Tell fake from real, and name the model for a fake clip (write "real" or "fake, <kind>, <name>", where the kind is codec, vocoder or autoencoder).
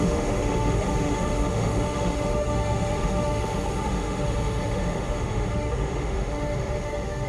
fake, autoencoder, DAC-VAE